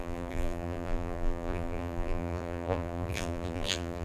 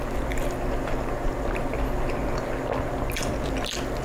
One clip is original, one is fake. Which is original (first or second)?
second